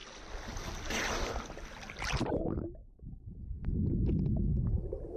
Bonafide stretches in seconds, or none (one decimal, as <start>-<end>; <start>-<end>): 0.0-5.2